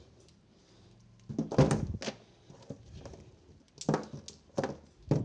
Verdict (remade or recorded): recorded